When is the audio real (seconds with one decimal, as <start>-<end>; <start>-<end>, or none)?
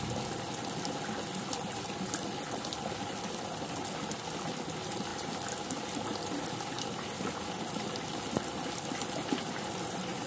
0.0-10.3